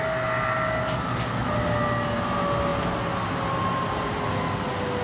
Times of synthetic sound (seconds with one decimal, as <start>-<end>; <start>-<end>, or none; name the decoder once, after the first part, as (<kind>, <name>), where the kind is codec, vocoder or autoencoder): none